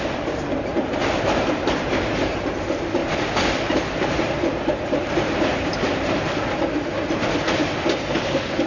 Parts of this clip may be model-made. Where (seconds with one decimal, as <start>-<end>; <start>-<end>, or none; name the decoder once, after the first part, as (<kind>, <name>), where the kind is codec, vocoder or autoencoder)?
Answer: 0.7-1.3 (vocoder, BigVGAN v2); 3.0-6.1